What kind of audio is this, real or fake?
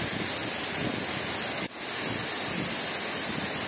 real